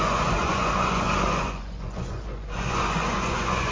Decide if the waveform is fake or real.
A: fake